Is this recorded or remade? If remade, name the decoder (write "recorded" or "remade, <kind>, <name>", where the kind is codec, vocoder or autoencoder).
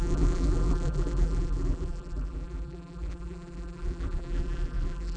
remade, vocoder, BigVGAN v2